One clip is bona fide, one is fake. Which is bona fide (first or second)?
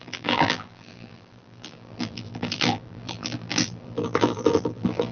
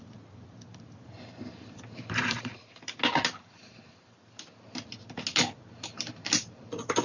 second